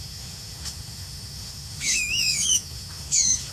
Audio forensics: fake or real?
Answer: fake